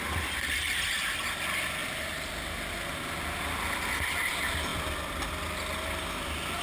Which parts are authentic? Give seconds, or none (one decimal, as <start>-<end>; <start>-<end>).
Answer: 0.0-1.8; 2.7-6.6